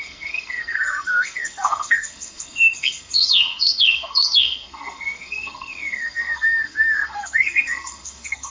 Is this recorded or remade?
remade